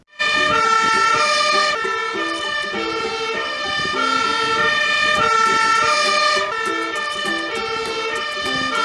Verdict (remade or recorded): recorded